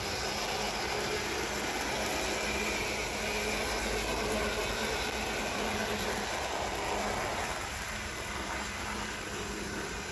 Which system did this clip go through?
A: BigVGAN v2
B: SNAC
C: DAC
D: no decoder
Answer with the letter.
D